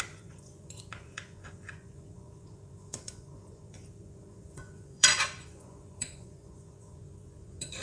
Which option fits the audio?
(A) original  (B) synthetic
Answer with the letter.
B